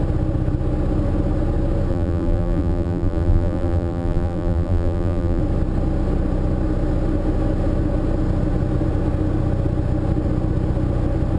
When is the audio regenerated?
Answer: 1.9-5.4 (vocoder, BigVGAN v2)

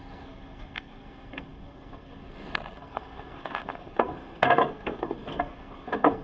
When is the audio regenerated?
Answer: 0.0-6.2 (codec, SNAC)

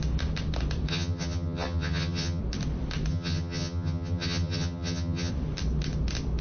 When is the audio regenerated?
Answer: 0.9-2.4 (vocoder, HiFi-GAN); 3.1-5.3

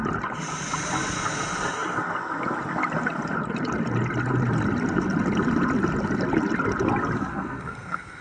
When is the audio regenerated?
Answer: 7.3-8.2 (codec, SNAC)